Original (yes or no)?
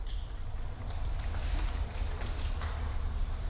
yes